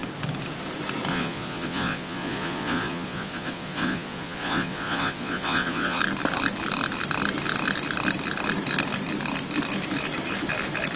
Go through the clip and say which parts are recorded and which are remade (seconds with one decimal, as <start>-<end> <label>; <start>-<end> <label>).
0.0-1.1 recorded; 1.1-6.0 remade; 6.0-11.0 recorded